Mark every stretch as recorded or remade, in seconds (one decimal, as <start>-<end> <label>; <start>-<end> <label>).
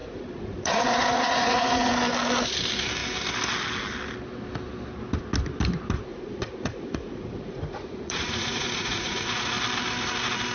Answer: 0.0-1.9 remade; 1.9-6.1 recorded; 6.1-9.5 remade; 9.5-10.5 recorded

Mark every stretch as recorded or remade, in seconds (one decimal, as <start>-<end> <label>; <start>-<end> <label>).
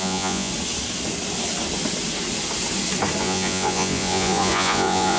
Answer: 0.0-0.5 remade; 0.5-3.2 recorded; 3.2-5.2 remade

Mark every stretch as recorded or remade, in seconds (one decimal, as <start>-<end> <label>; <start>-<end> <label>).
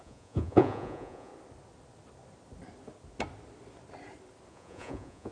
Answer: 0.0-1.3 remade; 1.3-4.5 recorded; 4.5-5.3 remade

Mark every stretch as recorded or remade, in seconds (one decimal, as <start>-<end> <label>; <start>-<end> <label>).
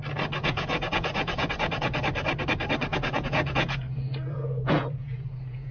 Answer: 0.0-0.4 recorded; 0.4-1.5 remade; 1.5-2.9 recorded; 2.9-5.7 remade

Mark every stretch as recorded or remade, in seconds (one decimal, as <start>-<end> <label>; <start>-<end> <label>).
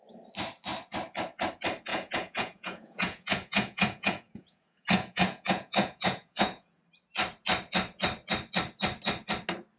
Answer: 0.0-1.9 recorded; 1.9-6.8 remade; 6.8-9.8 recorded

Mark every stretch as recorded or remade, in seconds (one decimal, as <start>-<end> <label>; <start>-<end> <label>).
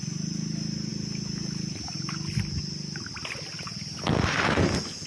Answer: 0.0-5.1 recorded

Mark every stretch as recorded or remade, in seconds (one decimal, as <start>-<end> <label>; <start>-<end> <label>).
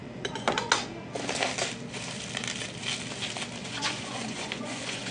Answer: 0.0-0.7 remade; 0.7-3.6 recorded; 3.6-5.1 remade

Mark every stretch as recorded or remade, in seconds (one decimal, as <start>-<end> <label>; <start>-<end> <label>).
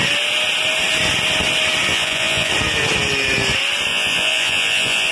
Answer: 0.0-1.9 recorded; 1.9-2.5 remade; 2.5-3.9 recorded; 3.9-5.1 remade